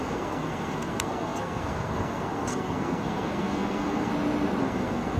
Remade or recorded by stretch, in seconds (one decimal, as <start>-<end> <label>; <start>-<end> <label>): 0.0-4.1 remade; 4.1-4.6 recorded; 4.6-5.2 remade